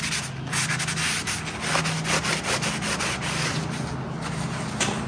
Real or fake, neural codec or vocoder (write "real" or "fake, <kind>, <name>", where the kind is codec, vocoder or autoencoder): real